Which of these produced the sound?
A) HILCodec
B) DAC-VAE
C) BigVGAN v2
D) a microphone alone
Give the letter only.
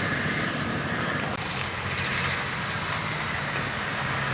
D